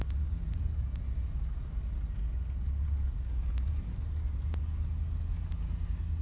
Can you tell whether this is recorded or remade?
recorded